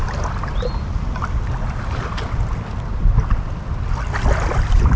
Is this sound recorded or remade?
recorded